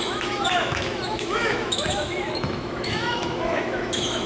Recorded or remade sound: remade